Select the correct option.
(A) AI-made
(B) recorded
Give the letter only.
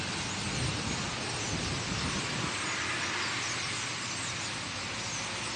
B